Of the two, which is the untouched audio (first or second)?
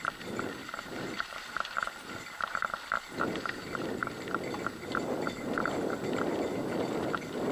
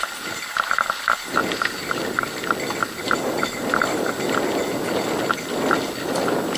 second